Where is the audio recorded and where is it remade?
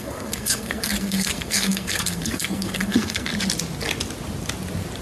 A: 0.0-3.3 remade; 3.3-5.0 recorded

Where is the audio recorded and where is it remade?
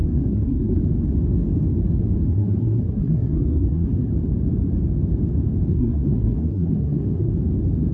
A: 0.0-0.8 remade; 0.8-2.3 recorded; 2.3-4.1 remade; 4.1-5.7 recorded; 5.7-7.3 remade; 7.3-7.9 recorded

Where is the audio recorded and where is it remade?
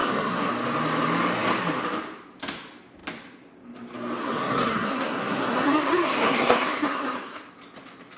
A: 0.0-0.5 remade; 0.5-4.2 recorded; 4.2-7.4 remade; 7.4-8.2 recorded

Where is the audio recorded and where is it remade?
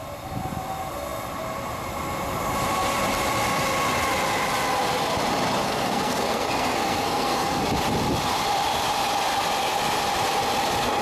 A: 0.0-5.6 recorded; 5.6-7.6 remade; 7.6-11.0 recorded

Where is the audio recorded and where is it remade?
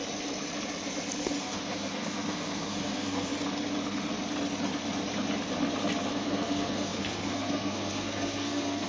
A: 0.0-1.4 recorded; 1.4-3.3 remade; 3.3-6.1 recorded; 6.1-8.9 remade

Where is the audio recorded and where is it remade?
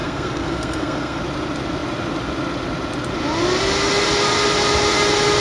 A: 0.0-1.2 remade; 1.2-5.4 recorded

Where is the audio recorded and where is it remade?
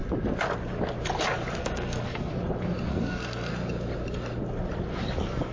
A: 0.0-1.6 recorded; 1.6-2.3 remade; 2.3-2.9 recorded; 2.9-3.5 remade; 3.5-5.5 recorded